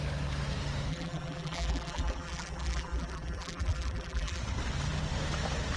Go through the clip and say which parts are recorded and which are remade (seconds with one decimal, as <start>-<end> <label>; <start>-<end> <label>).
0.0-0.9 recorded; 0.9-4.4 remade; 4.4-5.8 recorded